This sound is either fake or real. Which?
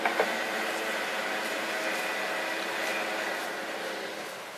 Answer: real